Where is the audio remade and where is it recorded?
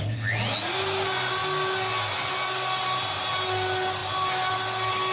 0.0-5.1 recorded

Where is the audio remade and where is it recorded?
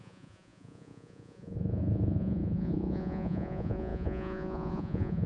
0.0-5.3 remade